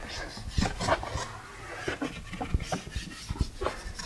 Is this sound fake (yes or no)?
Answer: no